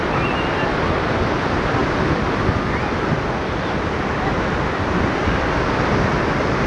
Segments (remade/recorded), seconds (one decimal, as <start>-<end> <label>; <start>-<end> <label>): 0.0-6.7 recorded